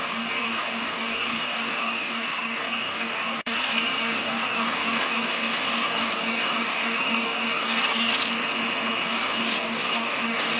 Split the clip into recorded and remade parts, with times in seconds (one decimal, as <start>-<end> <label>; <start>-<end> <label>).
0.0-8.1 remade; 8.1-8.9 recorded; 8.9-10.6 remade

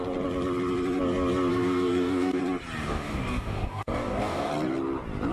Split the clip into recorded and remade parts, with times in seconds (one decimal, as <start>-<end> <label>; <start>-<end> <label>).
0.0-1.5 recorded; 1.5-2.4 remade; 2.4-2.8 recorded; 2.8-4.5 remade; 4.5-5.3 recorded

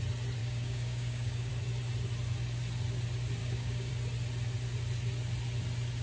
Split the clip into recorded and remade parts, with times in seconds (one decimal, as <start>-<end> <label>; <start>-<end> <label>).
0.0-0.4 recorded; 0.4-1.5 remade; 1.5-3.4 recorded; 3.4-3.9 remade; 3.9-6.0 recorded

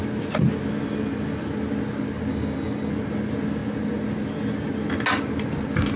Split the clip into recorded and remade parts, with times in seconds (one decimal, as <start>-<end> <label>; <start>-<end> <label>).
0.0-2.3 recorded; 2.3-2.9 remade; 2.9-6.0 recorded

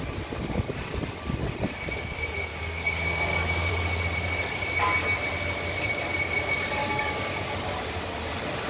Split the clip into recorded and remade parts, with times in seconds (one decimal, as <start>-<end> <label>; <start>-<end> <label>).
0.0-2.5 recorded; 2.5-3.7 remade; 3.7-6.8 recorded; 6.8-7.5 remade; 7.5-8.7 recorded

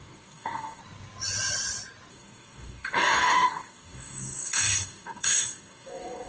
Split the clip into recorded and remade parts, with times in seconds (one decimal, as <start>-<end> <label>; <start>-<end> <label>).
0.0-0.8 remade; 0.8-2.1 recorded; 2.1-6.3 remade

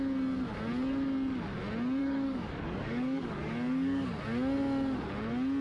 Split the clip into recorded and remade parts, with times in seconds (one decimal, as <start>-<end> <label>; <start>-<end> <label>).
0.0-2.0 recorded; 2.0-4.2 remade; 4.2-5.6 recorded